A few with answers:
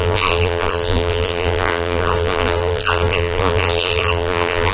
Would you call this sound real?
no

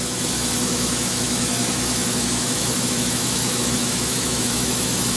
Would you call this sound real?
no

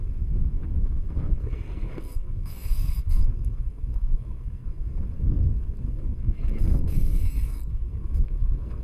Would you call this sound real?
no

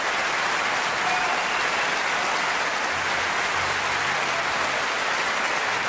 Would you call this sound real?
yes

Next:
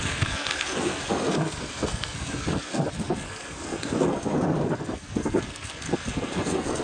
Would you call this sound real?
no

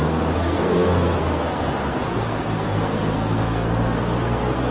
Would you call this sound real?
no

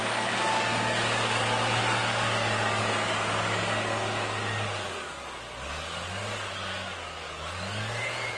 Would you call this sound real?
no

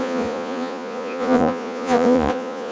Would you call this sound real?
no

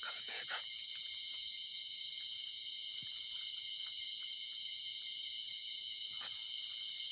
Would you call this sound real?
no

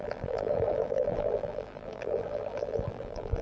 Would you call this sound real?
no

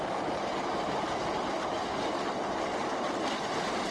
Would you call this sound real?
yes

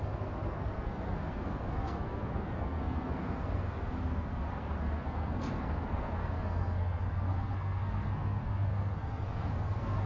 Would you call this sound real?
no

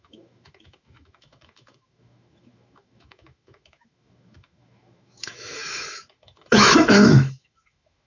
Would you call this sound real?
no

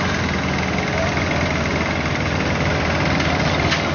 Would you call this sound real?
yes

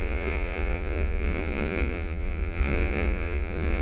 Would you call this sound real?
no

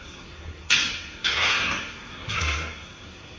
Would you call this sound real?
no